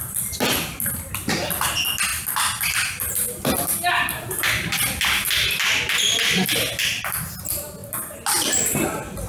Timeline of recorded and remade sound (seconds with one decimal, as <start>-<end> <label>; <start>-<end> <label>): 0.0-9.3 recorded